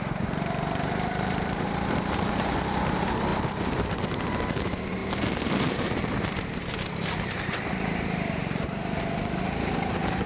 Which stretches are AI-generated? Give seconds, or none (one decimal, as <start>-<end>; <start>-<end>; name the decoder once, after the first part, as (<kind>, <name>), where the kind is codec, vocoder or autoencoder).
0.0-10.3 (vocoder, BigVGAN v2)